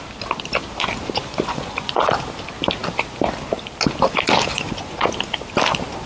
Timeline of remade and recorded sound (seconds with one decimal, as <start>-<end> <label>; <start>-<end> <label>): 0.0-1.2 recorded; 1.2-2.0 remade; 2.0-4.5 recorded; 4.5-5.1 remade; 5.1-6.1 recorded